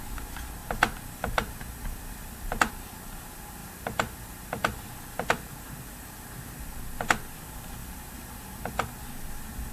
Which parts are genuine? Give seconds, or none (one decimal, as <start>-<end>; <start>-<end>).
0.0-0.6; 2.7-3.6; 5.8-7.8; 8.6-9.7